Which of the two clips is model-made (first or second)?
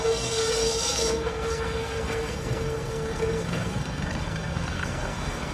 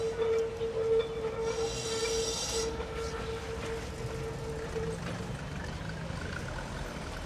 first